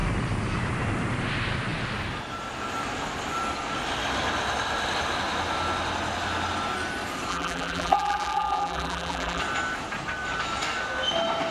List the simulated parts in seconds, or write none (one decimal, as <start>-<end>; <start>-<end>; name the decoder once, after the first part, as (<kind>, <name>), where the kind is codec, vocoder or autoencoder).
7.3-9.4 (vocoder, BigVGAN v2)